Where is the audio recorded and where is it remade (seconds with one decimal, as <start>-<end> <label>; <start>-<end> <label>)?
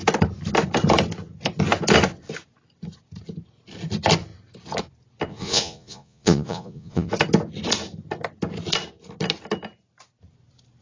0.0-5.3 recorded; 5.3-7.1 remade; 7.1-10.8 recorded